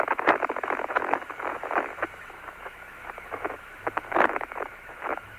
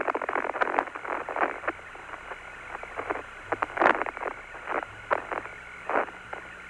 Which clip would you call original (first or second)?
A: second